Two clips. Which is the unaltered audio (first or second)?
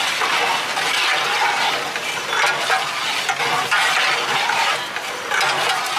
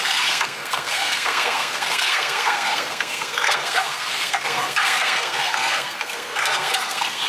first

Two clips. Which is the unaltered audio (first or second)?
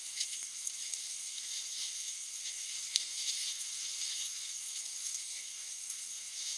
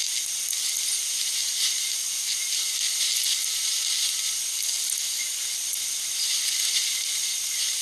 second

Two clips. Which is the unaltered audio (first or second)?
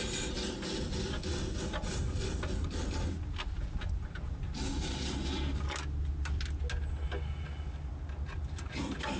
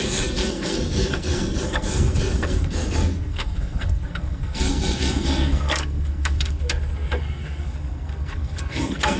first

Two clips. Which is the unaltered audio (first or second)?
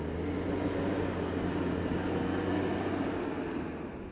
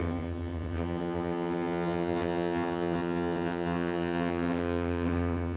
first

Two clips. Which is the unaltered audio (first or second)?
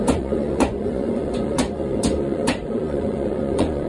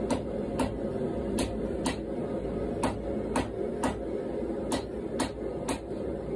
second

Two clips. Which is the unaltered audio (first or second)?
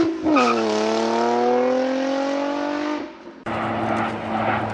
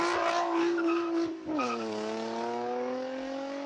first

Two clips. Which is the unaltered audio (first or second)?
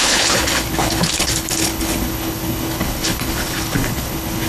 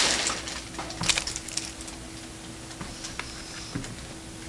second